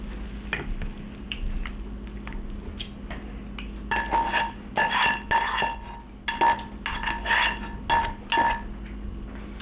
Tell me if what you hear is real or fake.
real